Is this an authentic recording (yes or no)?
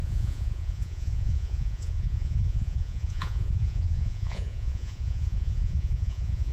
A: no